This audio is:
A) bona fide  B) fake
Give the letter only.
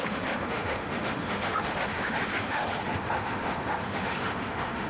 B